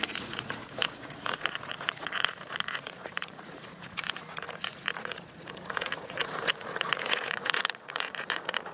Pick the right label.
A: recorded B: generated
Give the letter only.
B